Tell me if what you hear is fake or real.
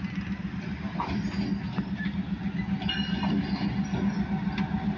real